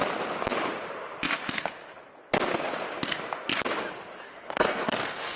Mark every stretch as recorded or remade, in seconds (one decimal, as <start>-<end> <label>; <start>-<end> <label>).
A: 0.0-4.3 recorded; 4.3-5.4 remade